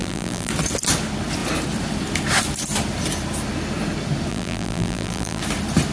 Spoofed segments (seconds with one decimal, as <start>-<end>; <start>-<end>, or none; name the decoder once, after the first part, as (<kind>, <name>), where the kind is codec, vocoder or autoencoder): 0.0-0.5 (vocoder, BigVGAN v2); 4.3-5.4